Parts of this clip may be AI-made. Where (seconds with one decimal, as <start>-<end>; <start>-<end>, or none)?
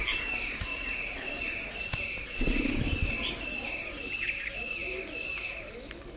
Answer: 0.7-1.4